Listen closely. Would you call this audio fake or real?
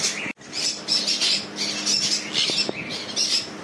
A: real